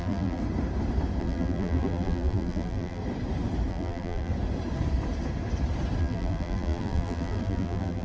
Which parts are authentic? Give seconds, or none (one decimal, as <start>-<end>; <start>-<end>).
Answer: 0.4-1.2; 3.0-3.7; 4.3-6.0